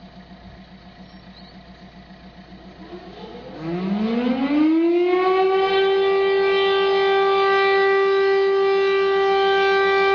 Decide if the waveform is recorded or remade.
recorded